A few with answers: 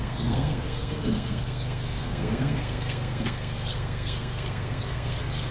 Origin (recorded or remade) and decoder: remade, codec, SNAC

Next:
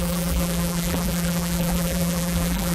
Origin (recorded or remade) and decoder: remade, vocoder, BigVGAN v2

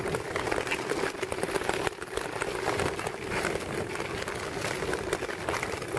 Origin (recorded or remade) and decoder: recorded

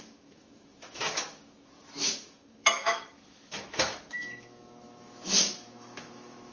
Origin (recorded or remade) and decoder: remade, autoencoder, DAC-VAE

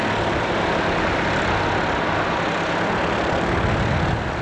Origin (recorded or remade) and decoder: recorded